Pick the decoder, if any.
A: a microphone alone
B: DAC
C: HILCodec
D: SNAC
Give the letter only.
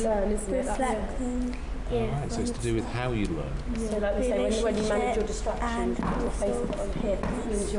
A